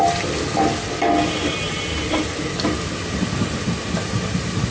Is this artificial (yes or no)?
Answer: no